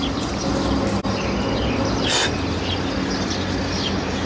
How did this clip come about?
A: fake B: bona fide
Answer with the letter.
B